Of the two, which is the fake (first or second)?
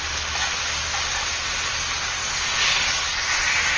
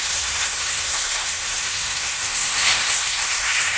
second